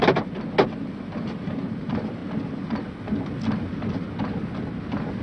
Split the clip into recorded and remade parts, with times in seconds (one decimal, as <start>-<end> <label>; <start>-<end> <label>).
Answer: 0.0-0.7 recorded; 0.7-2.2 remade; 2.2-5.2 recorded